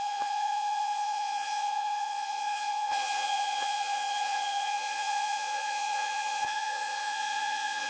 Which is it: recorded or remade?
remade